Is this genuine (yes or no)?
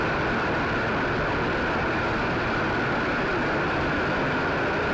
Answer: yes